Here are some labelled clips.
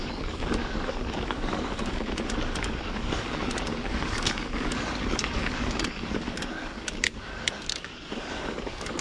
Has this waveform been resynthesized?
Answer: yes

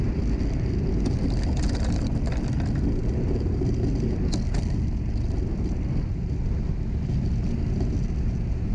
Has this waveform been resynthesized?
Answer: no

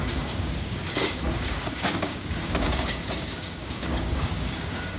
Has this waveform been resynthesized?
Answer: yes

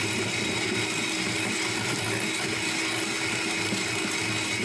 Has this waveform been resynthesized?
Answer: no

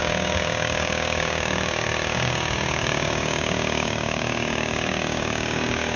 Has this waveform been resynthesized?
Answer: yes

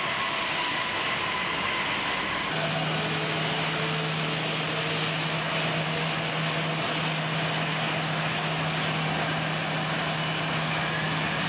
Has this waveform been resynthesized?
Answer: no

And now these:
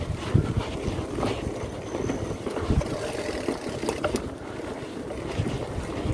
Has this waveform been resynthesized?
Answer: no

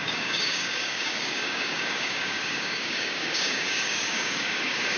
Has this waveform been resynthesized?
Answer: yes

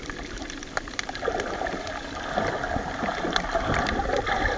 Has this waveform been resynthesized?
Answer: no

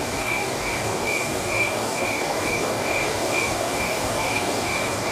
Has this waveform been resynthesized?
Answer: yes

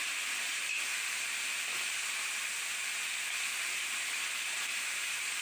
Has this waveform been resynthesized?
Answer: no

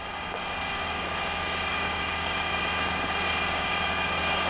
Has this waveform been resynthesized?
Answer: yes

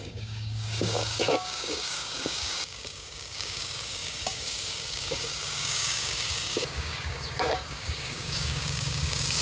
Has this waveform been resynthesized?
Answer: yes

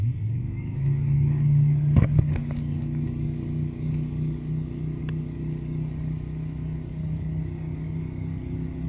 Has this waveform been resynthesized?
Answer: yes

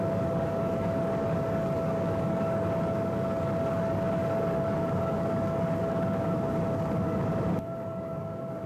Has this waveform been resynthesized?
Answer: yes